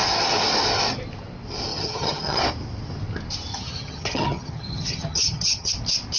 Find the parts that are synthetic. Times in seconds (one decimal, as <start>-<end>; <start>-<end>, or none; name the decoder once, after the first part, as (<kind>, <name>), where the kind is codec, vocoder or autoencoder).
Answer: 1.7-2.4 (vocoder, HiFi-GAN); 3.5-5.7